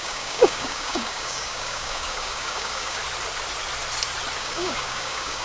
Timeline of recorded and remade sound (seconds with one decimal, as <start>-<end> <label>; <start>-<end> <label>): 0.0-3.0 remade; 3.0-4.4 recorded; 4.4-5.4 remade